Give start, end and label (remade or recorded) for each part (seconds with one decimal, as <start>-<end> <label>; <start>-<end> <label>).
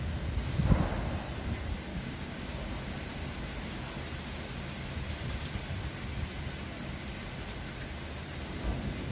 0.0-1.9 recorded; 1.9-3.0 remade; 3.0-9.1 recorded